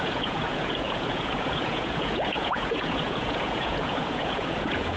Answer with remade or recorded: remade